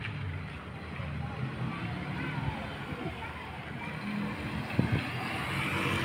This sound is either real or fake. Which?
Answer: real